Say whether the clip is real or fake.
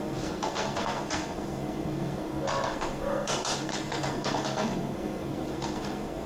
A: fake